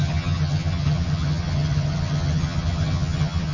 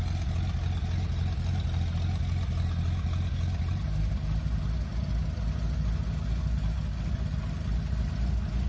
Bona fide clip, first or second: second